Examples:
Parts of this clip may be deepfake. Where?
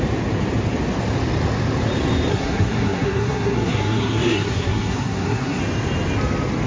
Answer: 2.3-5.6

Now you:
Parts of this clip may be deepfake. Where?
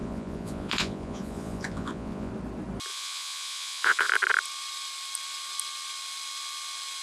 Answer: 0.0-2.3; 2.9-4.1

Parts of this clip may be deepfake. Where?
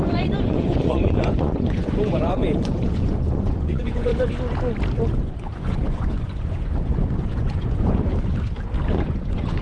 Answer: 0.0-4.1; 5.2-8.1; 8.9-9.6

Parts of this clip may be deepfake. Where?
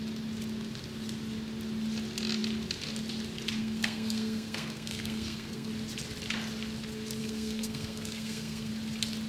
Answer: 3.6-5.7; 7.2-8.7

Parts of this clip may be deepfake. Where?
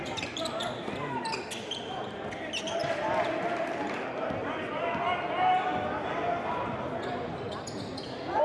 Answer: 0.0-2.8; 7.1-8.4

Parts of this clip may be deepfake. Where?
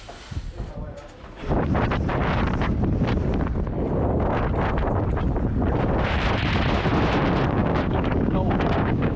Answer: 7.6-9.2